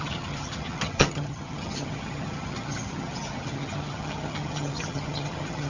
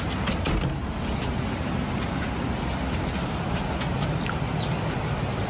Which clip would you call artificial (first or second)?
first